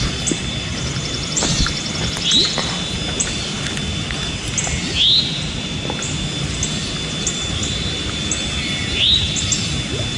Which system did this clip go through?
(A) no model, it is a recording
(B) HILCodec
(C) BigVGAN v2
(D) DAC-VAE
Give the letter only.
A